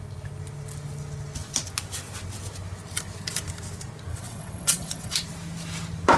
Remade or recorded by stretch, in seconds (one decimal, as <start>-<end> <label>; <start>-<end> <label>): 0.0-4.1 recorded; 4.1-5.1 remade; 5.1-6.2 recorded